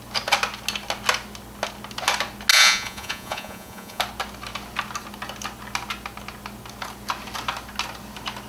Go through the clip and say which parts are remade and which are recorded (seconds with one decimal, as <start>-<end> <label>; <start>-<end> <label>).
0.0-2.5 recorded; 2.5-4.0 remade; 4.0-8.5 recorded